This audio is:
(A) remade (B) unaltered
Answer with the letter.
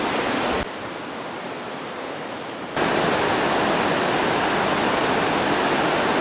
B